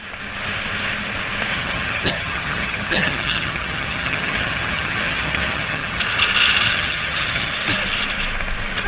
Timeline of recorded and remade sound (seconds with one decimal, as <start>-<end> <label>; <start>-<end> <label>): 0.0-1.5 recorded; 1.5-6.0 remade; 6.0-6.7 recorded; 6.7-7.5 remade; 7.5-8.9 recorded